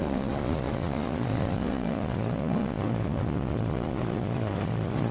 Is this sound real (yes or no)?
no